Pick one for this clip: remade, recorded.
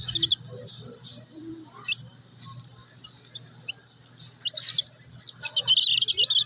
recorded